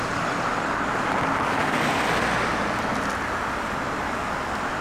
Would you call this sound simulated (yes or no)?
no